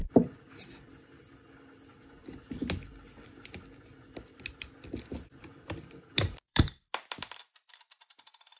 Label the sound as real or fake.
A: fake